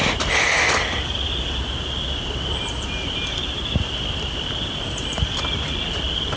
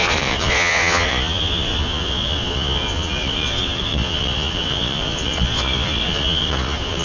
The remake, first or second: second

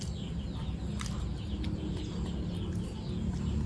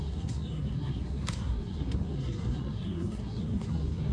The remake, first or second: second